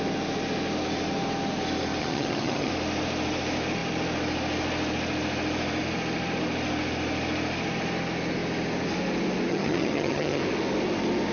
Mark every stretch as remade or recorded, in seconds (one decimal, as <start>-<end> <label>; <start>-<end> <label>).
0.0-2.0 recorded; 2.0-2.7 remade; 2.7-9.5 recorded; 9.5-10.4 remade; 10.4-11.3 recorded